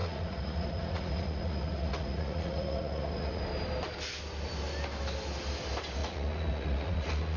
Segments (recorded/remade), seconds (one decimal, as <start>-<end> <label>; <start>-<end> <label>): 0.0-3.4 remade; 3.4-6.0 recorded; 6.0-7.4 remade